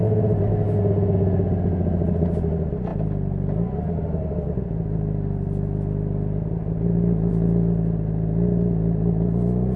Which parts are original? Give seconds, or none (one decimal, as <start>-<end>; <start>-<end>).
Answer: 0.0-9.8